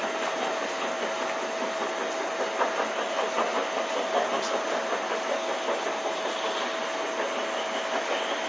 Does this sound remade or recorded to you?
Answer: recorded